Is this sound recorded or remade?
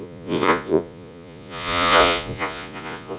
remade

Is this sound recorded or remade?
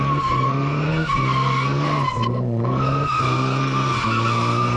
remade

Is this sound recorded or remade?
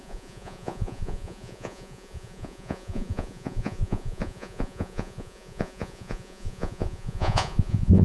remade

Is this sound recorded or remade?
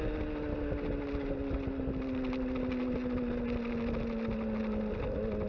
recorded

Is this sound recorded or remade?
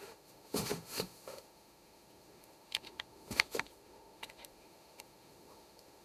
remade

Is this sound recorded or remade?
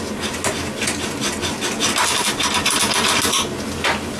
recorded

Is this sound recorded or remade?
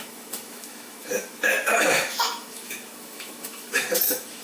remade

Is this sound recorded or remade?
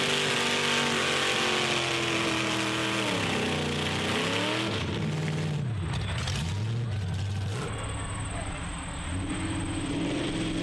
recorded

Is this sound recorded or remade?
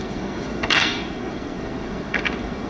remade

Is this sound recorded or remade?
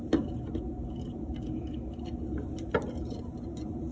recorded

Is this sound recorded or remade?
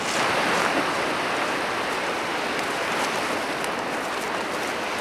recorded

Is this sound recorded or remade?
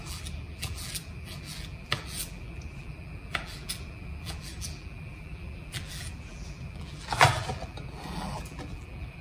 remade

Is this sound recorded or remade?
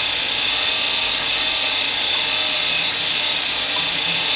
recorded